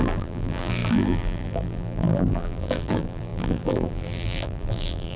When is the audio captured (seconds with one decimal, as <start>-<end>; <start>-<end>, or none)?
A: none